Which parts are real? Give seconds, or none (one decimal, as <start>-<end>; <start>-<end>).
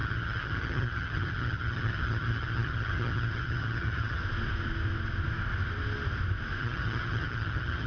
4.2-6.6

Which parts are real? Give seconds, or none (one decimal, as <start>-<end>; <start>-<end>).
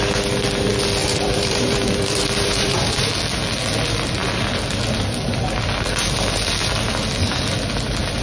0.0-1.0; 3.1-8.2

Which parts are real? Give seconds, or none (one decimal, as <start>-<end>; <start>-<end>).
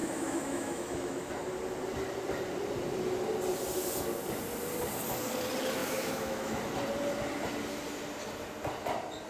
1.3-5.8; 6.6-9.3